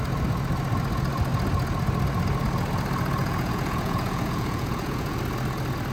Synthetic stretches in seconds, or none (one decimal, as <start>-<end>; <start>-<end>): 3.2-5.2